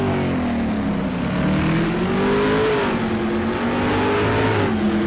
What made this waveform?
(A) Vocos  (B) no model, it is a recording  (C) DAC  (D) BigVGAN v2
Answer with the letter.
B